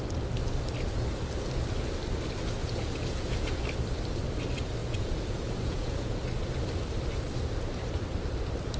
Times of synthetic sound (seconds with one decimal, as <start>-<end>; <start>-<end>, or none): 2.6-3.6; 4.8-6.2